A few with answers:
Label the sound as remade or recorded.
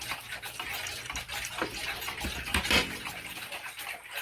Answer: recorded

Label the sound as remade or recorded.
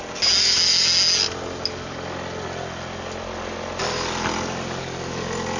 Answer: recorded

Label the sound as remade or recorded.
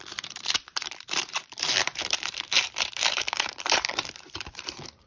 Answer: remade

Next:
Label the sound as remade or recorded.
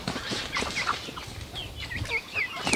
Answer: remade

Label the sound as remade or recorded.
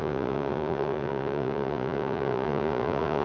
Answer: remade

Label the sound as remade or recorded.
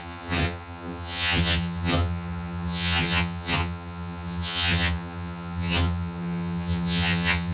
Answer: remade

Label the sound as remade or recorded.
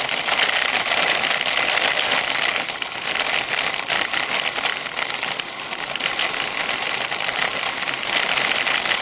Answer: recorded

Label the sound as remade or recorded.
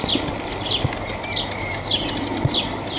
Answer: recorded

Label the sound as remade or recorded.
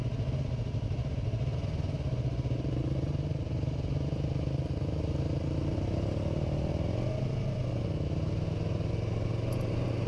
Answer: recorded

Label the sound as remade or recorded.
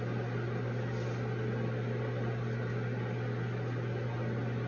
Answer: recorded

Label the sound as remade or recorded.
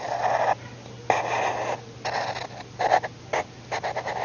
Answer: recorded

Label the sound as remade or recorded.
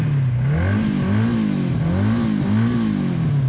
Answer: recorded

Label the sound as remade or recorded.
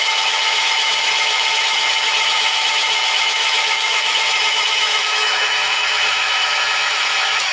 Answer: remade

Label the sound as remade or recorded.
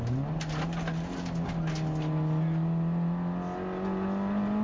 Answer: recorded